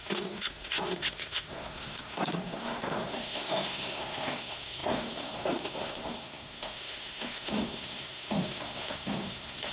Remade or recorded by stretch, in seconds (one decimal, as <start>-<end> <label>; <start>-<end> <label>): 0.0-9.7 remade